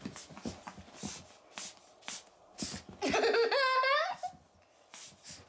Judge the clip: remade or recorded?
recorded